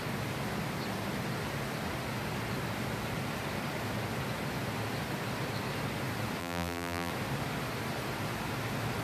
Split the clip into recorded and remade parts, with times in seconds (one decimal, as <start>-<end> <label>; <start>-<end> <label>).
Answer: 0.0-6.4 recorded; 6.4-7.1 remade; 7.1-9.0 recorded